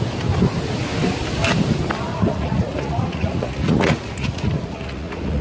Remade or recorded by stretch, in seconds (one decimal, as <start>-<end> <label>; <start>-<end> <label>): 0.0-2.1 recorded; 2.1-5.4 remade